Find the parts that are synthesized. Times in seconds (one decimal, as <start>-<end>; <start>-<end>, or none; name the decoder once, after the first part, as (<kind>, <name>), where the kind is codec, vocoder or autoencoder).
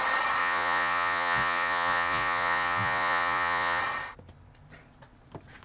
0.4-3.8 (vocoder, Vocos)